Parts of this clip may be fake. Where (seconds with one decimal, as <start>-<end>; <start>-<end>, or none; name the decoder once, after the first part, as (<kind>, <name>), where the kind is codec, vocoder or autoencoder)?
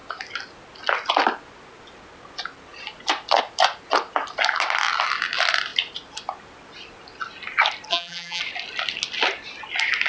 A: 7.9-8.4 (vocoder, BigVGAN v2)